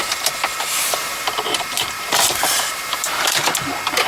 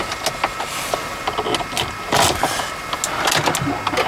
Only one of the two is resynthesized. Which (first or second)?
first